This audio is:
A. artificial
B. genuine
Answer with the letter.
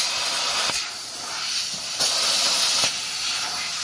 B